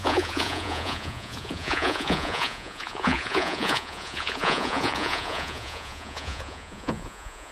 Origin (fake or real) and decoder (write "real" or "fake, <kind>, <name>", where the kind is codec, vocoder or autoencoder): fake, vocoder, Vocos